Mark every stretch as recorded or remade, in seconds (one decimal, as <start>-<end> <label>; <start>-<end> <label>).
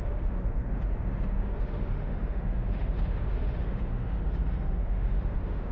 0.0-5.7 remade